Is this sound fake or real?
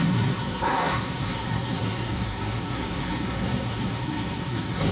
fake